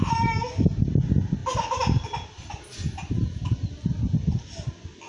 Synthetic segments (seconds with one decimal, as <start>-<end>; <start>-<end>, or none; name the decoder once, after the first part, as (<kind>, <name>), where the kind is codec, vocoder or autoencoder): none